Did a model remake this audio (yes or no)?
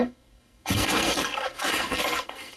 yes